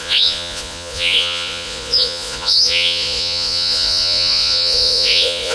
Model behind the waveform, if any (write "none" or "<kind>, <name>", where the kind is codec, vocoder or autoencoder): vocoder, Vocos